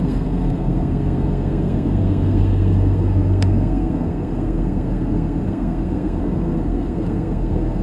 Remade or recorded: remade